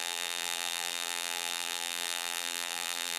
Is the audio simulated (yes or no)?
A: yes